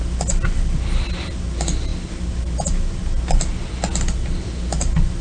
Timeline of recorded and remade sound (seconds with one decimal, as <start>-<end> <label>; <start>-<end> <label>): 0.0-5.2 recorded